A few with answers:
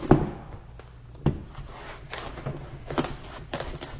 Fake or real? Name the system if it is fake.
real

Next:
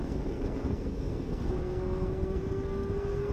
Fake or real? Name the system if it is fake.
fake, codec, SNAC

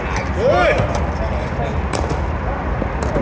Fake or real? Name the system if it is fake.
real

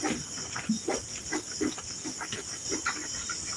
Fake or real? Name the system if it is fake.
real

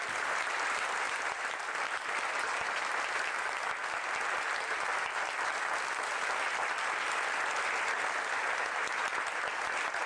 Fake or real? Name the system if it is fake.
real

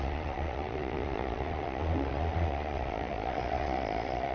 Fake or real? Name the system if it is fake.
fake, vocoder, Vocos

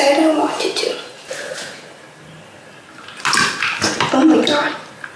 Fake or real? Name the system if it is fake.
real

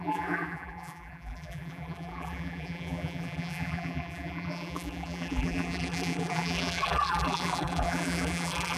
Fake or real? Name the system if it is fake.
fake, vocoder, BigVGAN v2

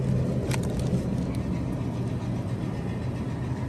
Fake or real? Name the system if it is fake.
real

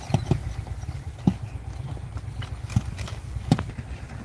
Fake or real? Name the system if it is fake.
real